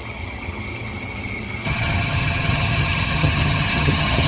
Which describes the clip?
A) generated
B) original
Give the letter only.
A